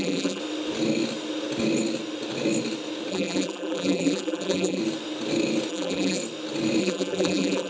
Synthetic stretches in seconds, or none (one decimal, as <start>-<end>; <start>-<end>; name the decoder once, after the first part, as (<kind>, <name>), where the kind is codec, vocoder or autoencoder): 0.0-0.4 (vocoder, BigVGAN v2); 3.1-4.8; 5.7-6.2; 6.8-7.7